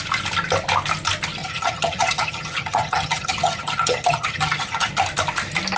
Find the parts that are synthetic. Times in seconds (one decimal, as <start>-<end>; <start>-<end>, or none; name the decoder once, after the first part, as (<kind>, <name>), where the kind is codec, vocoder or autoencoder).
1.4-4.9 (vocoder, HiFi-GAN)